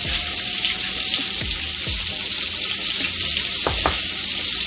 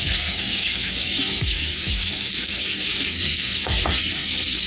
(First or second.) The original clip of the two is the first